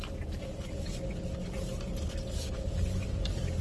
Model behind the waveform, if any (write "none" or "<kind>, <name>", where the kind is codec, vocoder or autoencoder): none